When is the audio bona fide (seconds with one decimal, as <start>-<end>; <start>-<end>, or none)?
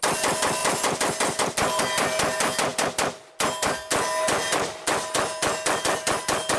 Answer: 0.0-6.6